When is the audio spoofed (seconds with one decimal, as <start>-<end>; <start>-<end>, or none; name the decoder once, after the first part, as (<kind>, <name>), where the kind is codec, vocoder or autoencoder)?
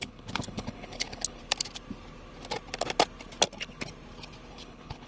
0.0-1.4 (codec, HILCodec); 4.5-5.1